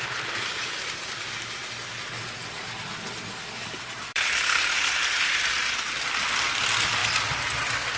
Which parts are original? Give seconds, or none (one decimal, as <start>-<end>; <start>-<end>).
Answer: 0.0-3.4; 4.7-5.4; 6.1-7.0; 7.6-8.0